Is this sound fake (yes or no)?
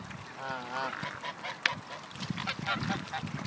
no